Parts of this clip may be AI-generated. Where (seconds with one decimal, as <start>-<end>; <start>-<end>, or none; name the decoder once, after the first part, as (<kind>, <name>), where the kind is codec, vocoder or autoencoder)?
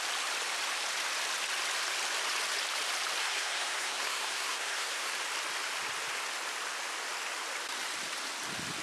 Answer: 3.2-5.1 (codec, SNAC)